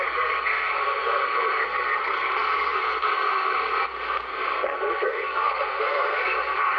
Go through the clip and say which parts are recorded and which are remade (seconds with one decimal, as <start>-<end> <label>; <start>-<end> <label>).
0.0-6.8 remade